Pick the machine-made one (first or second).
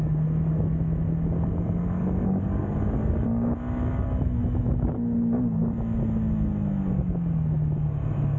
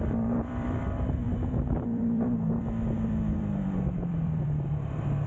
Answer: second